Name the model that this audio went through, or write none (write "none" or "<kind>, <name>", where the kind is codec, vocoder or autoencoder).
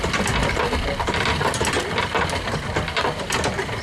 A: none